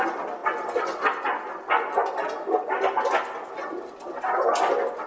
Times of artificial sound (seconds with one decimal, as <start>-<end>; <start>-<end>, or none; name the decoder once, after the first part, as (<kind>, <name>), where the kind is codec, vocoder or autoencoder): none